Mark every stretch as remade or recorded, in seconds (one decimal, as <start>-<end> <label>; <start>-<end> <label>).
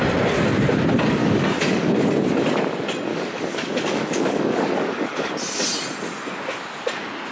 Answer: 0.0-1.2 recorded; 1.2-1.9 remade; 1.9-3.1 recorded; 3.1-5.3 remade; 5.3-7.3 recorded